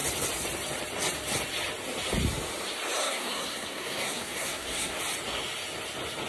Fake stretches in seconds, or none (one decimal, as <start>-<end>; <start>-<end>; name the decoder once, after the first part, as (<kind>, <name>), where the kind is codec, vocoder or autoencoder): 3.0-5.0 (codec, SNAC)